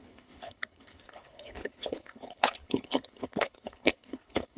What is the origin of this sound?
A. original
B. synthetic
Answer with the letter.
B